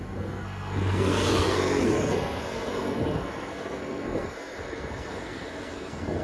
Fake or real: fake